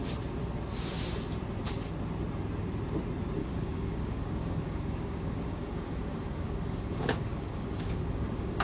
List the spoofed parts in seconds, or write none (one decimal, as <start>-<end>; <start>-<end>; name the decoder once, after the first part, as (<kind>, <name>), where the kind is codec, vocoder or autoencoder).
3.4-8.6 (codec, DAC)